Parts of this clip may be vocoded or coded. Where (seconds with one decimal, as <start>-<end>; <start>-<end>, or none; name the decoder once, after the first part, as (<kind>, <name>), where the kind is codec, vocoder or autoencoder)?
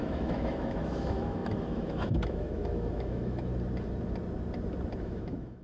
0.0-3.5 (autoencoder, DAC-VAE); 5.0-5.6